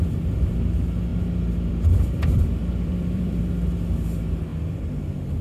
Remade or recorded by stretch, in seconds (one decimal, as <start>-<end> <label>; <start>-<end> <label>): 0.0-2.5 recorded; 2.5-3.4 remade; 3.4-4.5 recorded; 4.5-5.0 remade; 5.0-5.4 recorded